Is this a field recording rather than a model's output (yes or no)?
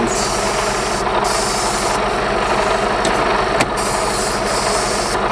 yes